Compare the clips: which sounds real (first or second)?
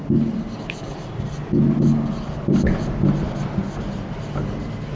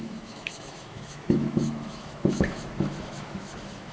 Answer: first